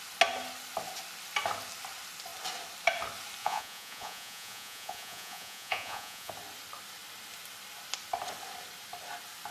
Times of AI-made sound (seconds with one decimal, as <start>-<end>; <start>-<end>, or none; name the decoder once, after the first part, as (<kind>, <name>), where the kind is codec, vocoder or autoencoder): 3.4-6.3 (vocoder, Vocos)